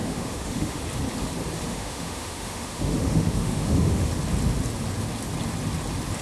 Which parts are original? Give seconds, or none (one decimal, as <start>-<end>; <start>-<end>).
0.8-1.7; 4.1-6.2